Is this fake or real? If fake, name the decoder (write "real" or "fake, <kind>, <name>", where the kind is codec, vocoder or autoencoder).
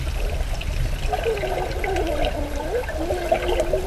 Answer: real